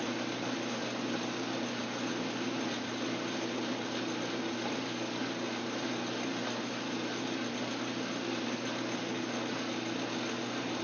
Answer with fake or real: real